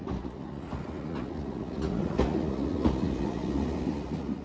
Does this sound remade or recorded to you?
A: remade